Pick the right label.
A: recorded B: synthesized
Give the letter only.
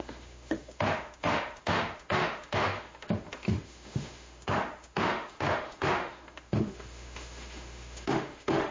B